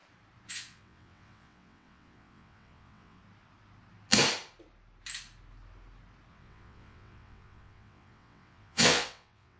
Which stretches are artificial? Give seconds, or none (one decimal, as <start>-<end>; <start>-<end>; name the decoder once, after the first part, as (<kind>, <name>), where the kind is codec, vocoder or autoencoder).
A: 0.5-3.2 (vocoder, WaveNeXt); 6.3-9.6

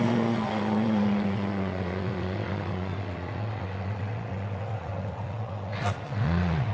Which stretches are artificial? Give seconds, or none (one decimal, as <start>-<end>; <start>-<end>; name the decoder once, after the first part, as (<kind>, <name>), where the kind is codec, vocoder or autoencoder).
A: 0.0-6.7 (vocoder, WaveNeXt)

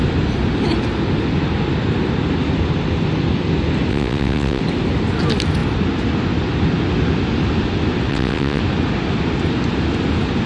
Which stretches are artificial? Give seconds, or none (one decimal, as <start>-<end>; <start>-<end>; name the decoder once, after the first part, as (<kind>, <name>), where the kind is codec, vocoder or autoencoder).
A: 3.9-4.6 (vocoder, WaveNeXt); 8.1-8.6

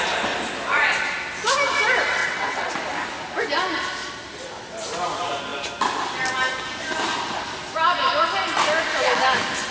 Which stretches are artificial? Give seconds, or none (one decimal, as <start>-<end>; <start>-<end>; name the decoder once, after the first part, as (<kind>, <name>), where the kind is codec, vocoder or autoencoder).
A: 2.2-2.7 (vocoder, WaveNeXt)

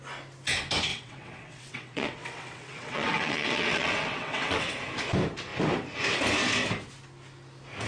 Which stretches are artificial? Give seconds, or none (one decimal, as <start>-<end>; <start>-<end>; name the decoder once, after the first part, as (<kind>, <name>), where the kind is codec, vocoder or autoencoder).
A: 0.9-4.7 (vocoder, WaveNeXt)